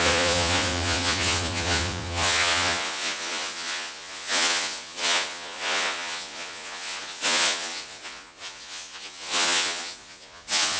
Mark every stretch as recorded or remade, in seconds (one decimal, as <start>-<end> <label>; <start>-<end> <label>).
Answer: 0.0-10.8 remade